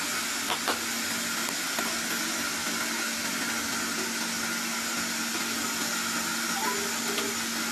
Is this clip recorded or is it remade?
recorded